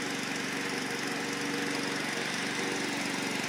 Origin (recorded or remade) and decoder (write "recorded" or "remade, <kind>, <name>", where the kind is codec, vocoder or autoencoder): recorded